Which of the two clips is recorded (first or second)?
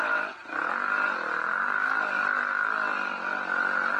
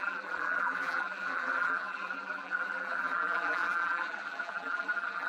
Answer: first